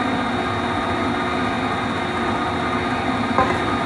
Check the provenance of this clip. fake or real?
real